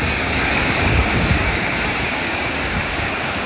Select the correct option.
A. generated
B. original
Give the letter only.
A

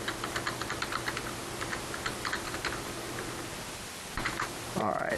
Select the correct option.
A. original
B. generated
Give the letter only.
A